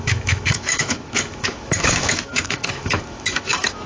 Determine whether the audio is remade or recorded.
remade